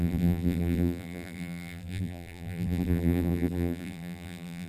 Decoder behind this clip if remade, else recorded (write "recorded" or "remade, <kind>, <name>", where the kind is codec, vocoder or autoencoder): remade, vocoder, BigVGAN v2